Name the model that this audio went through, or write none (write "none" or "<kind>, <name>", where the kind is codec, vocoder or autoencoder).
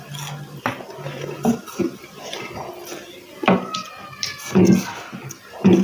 none